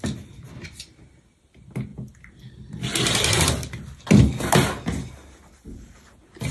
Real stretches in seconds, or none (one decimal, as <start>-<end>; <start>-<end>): 0.0-6.5